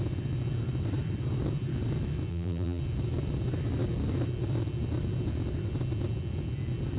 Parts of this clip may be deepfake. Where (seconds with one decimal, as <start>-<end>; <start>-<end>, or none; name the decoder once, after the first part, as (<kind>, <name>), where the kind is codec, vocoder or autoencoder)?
2.3-2.8 (vocoder, BigVGAN v2)